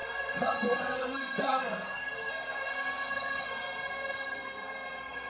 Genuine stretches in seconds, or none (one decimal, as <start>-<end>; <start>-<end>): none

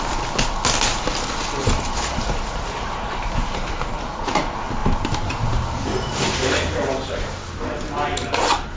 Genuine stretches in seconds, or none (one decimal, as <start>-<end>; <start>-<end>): 0.0-1.6; 3.5-4.8; 7.4-8.8

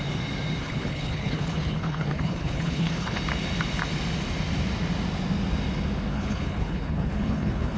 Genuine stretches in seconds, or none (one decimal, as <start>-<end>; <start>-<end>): 0.0-0.6; 3.2-6.1